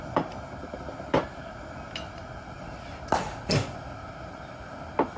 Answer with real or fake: real